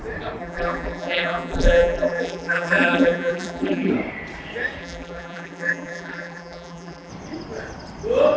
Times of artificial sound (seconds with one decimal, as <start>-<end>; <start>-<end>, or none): 0.4-3.9; 4.8-7.1